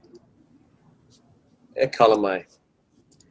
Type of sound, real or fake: real